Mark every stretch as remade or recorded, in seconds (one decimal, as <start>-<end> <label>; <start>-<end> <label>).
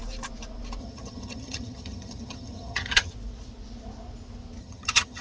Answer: 0.0-0.8 recorded; 0.8-3.1 remade; 3.1-4.6 recorded; 4.6-5.2 remade